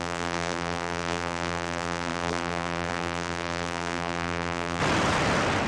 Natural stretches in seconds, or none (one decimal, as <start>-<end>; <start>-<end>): 4.8-5.7